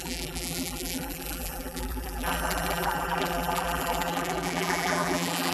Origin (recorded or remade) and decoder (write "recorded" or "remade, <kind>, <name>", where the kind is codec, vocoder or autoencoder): remade, vocoder, BigVGAN v2